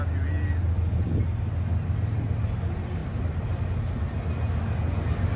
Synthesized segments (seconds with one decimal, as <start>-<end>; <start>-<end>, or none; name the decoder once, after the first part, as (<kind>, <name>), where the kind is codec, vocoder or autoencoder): none